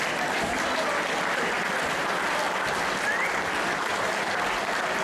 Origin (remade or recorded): recorded